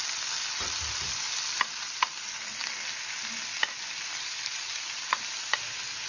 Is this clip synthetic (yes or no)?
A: no